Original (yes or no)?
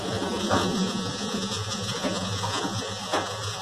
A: no